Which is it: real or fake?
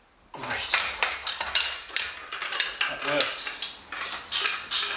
real